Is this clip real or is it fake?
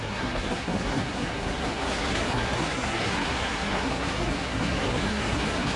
fake